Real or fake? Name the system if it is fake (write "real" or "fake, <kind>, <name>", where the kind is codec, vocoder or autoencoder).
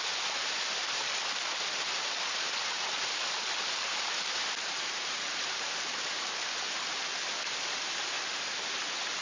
real